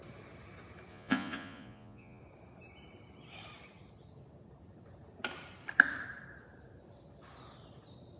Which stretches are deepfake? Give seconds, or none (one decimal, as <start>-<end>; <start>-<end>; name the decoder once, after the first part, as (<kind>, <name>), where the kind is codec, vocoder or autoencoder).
0.9-2.2 (vocoder, Vocos)